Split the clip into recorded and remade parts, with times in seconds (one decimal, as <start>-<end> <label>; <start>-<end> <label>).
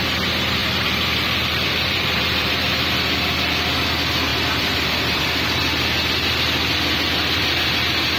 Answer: 0.0-0.6 recorded; 0.6-2.5 remade; 2.5-4.3 recorded; 4.3-5.2 remade; 5.2-8.2 recorded